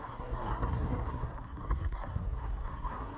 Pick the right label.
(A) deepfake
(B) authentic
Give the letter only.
A